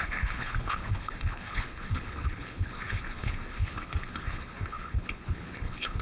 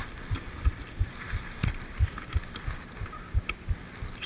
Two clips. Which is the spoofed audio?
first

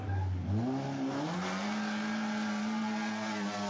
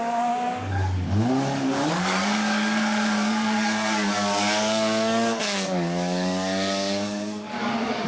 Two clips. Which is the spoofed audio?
second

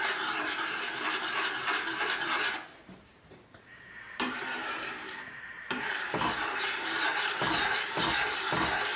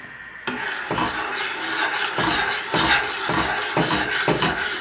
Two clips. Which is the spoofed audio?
first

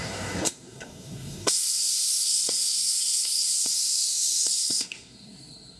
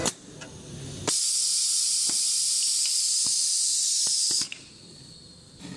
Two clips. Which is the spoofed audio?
first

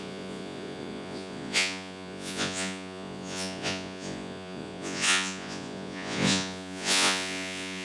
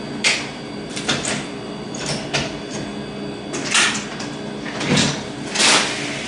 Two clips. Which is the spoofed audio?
first